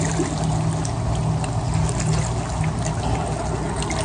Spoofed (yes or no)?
no